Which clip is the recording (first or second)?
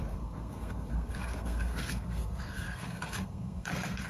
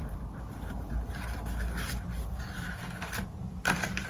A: second